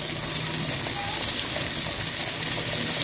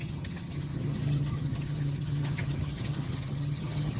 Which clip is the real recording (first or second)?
first